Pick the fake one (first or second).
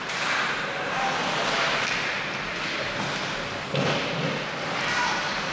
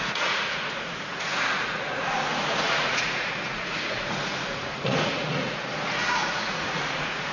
second